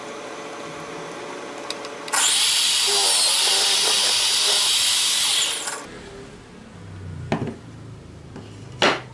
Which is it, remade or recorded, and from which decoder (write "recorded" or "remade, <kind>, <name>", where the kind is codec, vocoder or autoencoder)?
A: recorded